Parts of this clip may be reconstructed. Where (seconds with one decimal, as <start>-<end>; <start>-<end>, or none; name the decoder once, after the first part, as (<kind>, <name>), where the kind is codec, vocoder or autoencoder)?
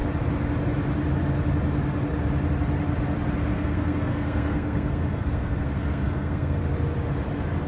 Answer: 3.5-6.6 (codec, SNAC)